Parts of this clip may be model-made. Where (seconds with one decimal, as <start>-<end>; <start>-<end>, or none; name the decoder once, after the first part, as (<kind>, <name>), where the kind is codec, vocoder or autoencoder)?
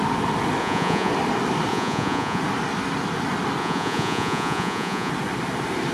0.6-1.1 (vocoder, Vocos); 1.7-2.4; 3.6-5.1